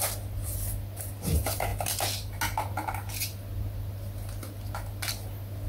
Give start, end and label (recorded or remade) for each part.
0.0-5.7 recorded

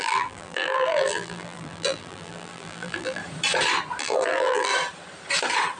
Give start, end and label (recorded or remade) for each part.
0.0-3.2 remade; 3.2-4.0 recorded; 4.0-4.7 remade; 4.7-5.8 recorded